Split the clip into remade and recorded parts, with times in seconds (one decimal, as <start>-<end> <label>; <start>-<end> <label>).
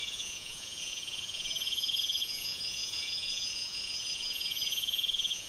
0.0-5.5 remade